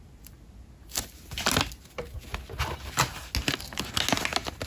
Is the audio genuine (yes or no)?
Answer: yes